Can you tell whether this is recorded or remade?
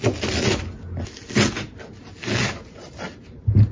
recorded